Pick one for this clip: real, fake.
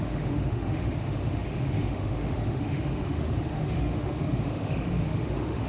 fake